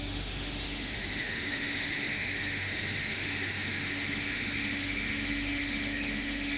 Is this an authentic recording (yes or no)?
no